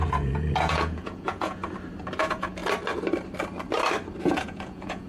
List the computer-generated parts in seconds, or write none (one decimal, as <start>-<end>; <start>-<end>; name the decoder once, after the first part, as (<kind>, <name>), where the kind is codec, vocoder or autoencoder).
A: 0.0-1.6 (vocoder, Vocos); 2.2-2.6; 4.2-5.1